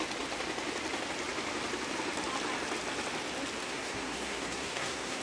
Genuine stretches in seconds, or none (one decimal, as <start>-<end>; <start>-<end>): 0.0-3.6